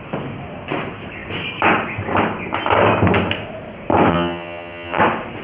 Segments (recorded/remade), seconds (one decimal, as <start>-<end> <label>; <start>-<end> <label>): 0.0-4.1 recorded; 4.1-5.0 remade; 5.0-5.4 recorded